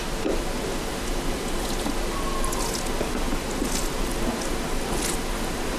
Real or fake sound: real